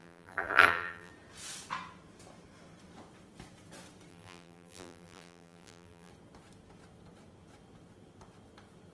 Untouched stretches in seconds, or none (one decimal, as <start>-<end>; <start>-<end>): 1.1-4.1; 6.1-8.9